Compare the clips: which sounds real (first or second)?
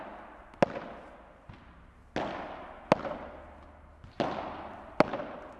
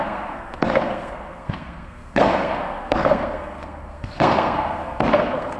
first